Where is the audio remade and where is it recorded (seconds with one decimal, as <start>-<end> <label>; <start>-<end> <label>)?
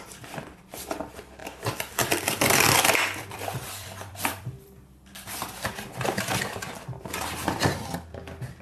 0.0-1.4 recorded; 1.4-6.2 remade; 6.2-8.6 recorded